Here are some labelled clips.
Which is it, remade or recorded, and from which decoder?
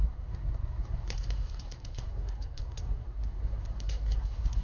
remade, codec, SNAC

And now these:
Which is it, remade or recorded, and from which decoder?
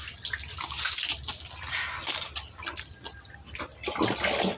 recorded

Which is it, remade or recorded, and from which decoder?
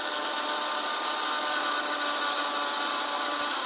recorded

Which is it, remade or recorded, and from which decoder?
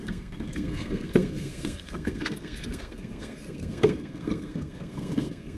remade, codec, SNAC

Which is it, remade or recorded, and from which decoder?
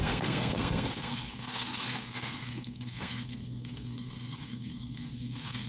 remade, codec, SNAC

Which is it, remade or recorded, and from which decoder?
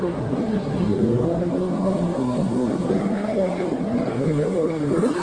remade, codec, SNAC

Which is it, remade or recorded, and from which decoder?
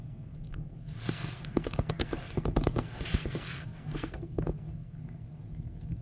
remade, codec, SNAC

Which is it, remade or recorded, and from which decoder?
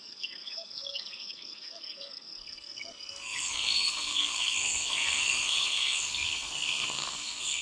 remade, codec, SNAC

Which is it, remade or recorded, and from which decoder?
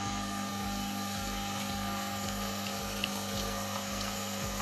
remade, codec, SNAC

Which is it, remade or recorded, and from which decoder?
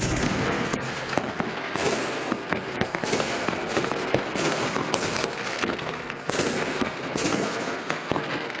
remade, codec, SNAC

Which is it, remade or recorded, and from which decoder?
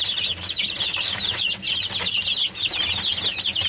recorded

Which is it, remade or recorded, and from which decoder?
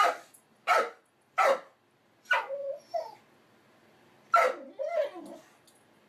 recorded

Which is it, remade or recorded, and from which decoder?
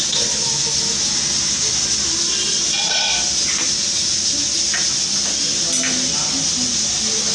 recorded